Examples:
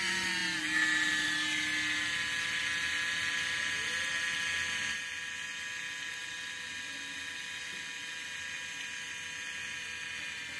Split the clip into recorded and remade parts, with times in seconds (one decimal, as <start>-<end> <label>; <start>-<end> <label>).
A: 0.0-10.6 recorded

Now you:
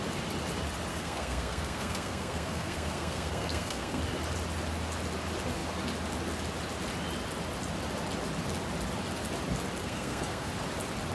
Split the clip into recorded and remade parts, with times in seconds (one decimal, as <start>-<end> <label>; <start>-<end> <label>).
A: 0.0-0.9 recorded; 0.9-4.0 remade; 4.0-9.8 recorded; 9.8-10.5 remade; 10.5-11.1 recorded

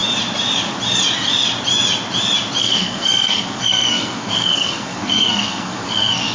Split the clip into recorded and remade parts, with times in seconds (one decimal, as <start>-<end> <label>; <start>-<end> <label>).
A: 0.0-2.6 recorded; 2.6-6.3 remade

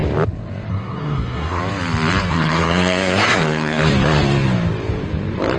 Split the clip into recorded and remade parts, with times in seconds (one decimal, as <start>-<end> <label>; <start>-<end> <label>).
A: 0.0-0.7 recorded; 0.7-1.6 remade; 1.6-2.3 recorded; 2.3-3.8 remade; 3.8-5.6 recorded

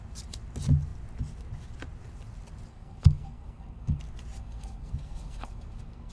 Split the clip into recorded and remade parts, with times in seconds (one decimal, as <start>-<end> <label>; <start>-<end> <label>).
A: 0.0-2.7 recorded; 2.7-4.0 remade; 4.0-4.4 recorded; 4.4-6.1 remade

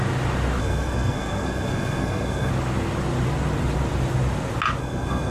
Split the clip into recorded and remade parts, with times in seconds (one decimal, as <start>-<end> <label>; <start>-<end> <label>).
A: 0.0-0.6 recorded; 0.6-2.5 remade; 2.5-4.8 recorded; 4.8-5.3 remade